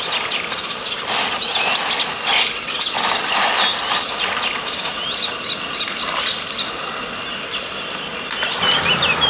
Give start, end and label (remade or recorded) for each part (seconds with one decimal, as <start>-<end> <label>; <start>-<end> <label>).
0.0-9.3 recorded